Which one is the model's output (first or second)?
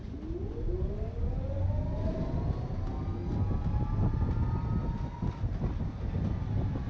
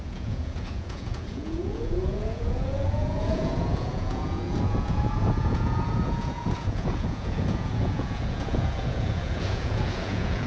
second